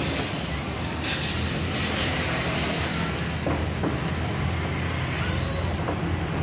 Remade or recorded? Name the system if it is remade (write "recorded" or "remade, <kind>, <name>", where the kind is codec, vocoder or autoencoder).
recorded